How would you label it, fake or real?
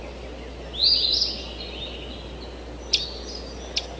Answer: real